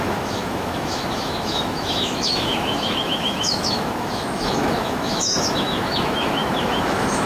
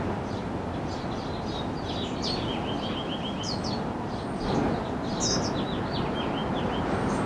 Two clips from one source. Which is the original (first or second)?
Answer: second